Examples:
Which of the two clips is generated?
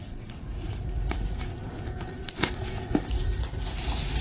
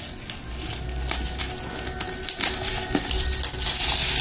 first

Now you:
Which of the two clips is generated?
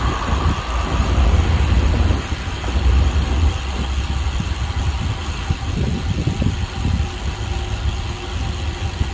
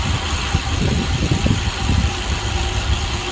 second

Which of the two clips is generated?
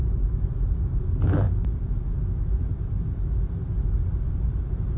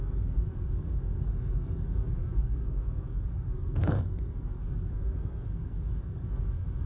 second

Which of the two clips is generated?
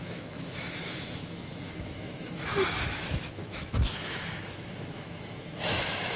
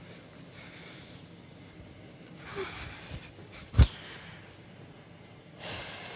first